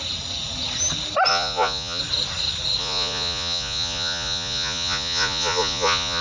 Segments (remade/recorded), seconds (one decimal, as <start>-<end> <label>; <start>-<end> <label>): 0.0-1.3 recorded; 1.3-2.0 remade; 2.0-2.8 recorded; 2.8-6.2 remade